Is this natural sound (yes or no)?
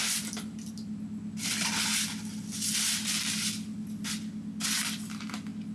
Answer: yes